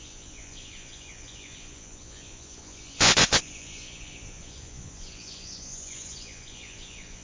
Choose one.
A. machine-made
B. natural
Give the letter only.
A